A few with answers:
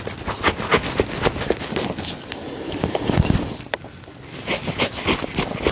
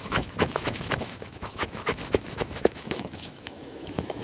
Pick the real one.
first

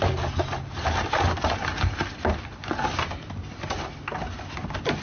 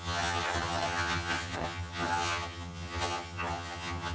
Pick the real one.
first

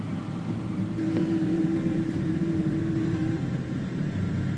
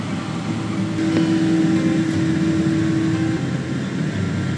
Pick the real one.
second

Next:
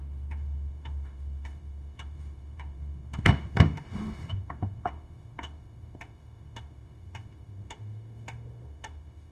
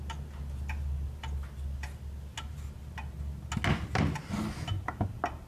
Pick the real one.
second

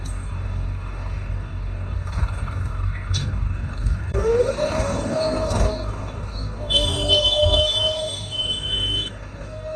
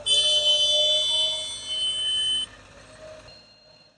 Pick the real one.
second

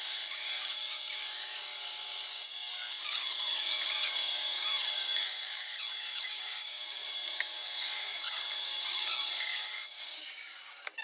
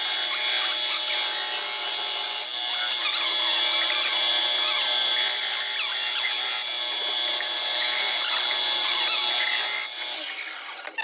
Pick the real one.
second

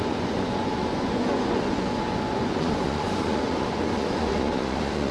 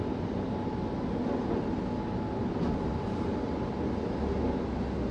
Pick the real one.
second